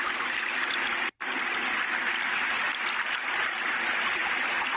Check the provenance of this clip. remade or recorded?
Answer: recorded